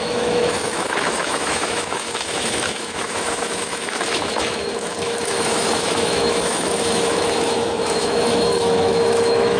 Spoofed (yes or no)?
yes